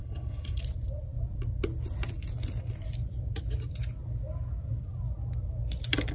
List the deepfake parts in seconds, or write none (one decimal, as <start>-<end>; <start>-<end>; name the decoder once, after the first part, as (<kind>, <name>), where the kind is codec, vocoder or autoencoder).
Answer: 0.0-0.6 (codec, HILCodec)